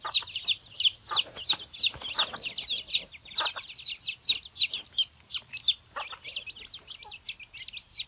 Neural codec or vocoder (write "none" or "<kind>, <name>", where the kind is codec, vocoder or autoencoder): none